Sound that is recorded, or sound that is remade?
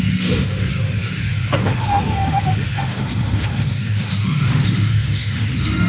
remade